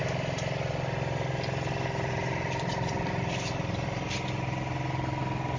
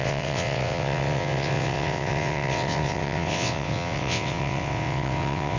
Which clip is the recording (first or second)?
first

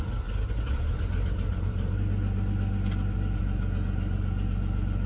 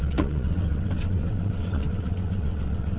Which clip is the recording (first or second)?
first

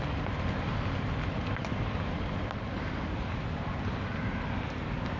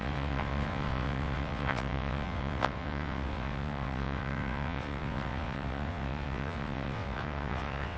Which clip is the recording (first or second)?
first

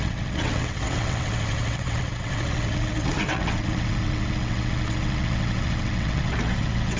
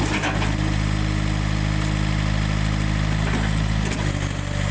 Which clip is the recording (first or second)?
second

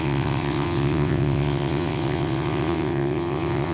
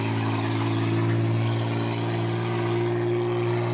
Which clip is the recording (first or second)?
second